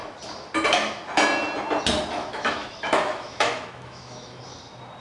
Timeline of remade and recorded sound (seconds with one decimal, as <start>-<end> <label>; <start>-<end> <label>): 0.0-2.2 recorded; 2.2-4.4 remade; 4.4-5.0 recorded